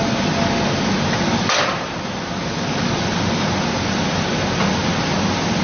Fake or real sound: real